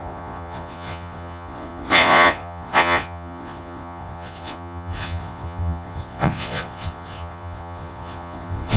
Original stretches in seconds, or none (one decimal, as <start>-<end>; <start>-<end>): none